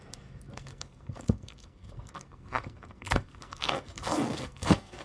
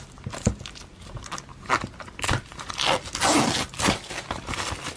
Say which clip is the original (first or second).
second